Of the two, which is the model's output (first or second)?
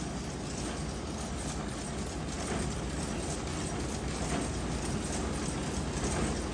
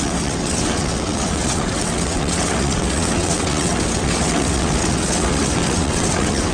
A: second